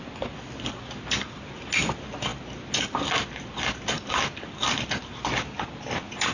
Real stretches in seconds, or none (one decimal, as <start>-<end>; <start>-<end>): 0.0-6.3